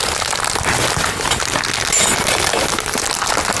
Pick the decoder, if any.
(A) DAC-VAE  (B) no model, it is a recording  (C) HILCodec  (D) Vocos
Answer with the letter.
B